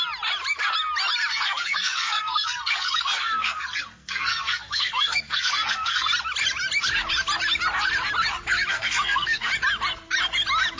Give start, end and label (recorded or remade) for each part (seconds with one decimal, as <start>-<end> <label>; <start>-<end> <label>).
0.0-1.3 recorded; 1.3-6.1 remade; 6.1-8.7 recorded; 8.7-9.5 remade; 9.5-10.8 recorded